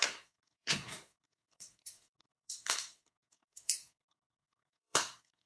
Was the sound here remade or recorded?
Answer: remade